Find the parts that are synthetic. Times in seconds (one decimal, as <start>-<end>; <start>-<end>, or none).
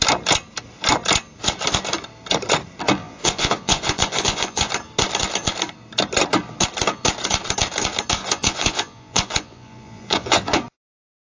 3.0-4.7; 8.2-10.6